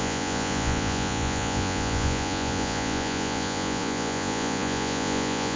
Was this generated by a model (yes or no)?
yes